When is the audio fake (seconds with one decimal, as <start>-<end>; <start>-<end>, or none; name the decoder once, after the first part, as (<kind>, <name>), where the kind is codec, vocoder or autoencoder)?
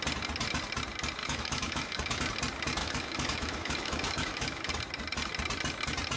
1.2-2.2 (autoencoder, DAC-VAE); 2.8-4.7